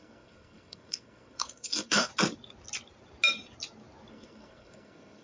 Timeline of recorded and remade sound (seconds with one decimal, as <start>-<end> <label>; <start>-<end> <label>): 0.0-2.1 remade; 2.1-4.1 recorded; 4.1-5.2 remade